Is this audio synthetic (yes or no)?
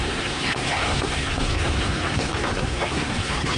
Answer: yes